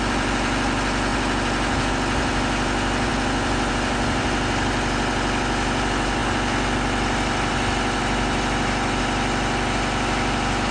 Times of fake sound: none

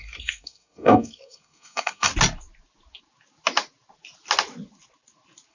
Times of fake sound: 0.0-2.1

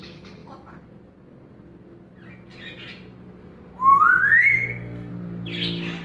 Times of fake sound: 4.5-5.1

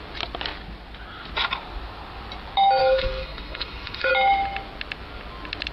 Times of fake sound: 2.8-4.1

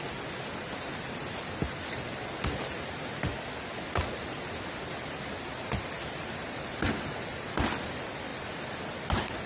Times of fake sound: none